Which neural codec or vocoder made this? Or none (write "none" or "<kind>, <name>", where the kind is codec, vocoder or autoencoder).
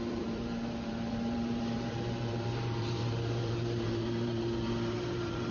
vocoder, BigVGAN v2